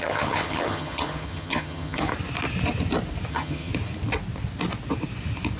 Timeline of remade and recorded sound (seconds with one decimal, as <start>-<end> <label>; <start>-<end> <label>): 0.0-2.1 remade; 2.1-3.3 recorded; 3.3-3.7 remade; 3.7-5.6 recorded